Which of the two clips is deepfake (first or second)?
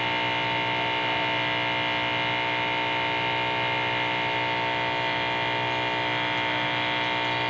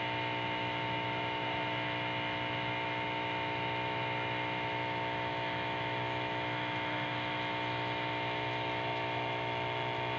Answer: second